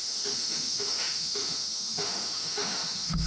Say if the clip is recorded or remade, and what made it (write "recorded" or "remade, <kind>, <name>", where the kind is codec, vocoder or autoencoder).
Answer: remade, autoencoder, DAC-VAE